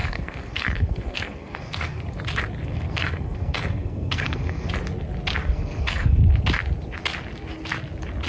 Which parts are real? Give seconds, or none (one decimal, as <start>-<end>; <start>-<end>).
2.0-2.7; 4.7-5.4; 6.2-8.3